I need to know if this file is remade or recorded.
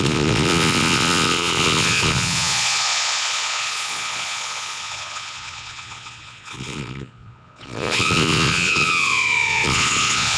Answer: remade